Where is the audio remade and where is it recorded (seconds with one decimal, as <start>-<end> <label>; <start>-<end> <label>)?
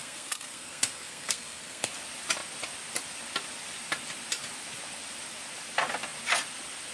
0.0-1.9 remade; 1.9-6.9 recorded